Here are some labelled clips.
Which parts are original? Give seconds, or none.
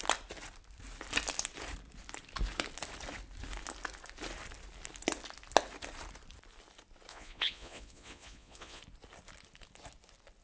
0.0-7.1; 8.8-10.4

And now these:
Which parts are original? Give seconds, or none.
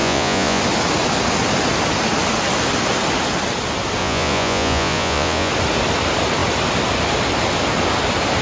0.6-4.0; 5.5-8.4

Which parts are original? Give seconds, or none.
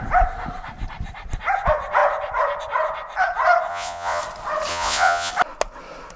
0.0-3.7; 4.2-4.7; 5.3-6.2